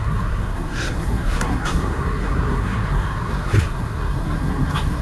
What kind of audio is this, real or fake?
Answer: fake